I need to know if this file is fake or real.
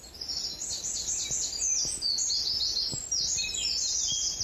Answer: real